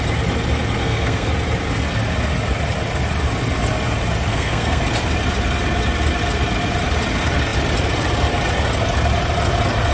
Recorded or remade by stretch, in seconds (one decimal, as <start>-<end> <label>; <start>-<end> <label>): 0.0-0.8 recorded; 0.8-1.3 remade; 1.3-4.3 recorded; 4.3-4.8 remade; 4.8-9.9 recorded